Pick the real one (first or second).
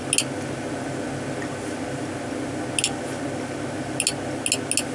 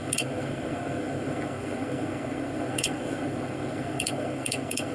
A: first